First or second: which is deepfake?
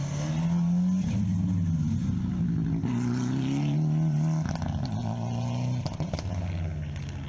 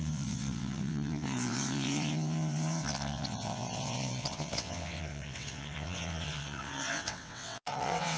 second